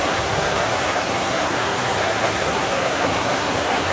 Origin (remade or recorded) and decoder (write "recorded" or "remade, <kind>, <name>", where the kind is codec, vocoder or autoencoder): remade, codec, SNAC